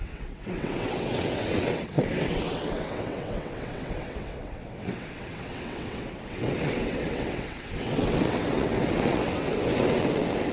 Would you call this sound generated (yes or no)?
yes